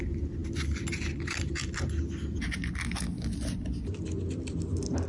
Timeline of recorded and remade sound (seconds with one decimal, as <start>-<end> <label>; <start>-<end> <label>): 0.0-5.1 recorded